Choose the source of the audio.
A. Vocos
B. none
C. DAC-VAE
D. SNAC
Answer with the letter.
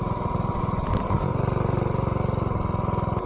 B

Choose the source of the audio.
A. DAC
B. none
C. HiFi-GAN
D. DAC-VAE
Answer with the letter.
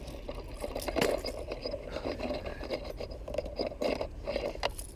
B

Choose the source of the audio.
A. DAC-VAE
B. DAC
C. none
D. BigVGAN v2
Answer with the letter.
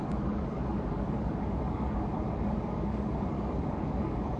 B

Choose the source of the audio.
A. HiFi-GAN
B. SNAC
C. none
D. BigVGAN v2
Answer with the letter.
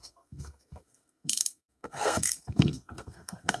B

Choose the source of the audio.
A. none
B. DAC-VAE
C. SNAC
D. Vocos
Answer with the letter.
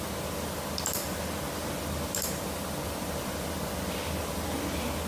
A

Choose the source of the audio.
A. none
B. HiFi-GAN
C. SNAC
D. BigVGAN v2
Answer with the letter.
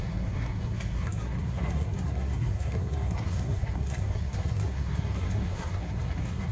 C